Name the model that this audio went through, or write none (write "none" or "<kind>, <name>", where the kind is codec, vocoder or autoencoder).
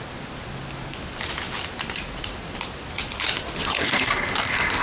none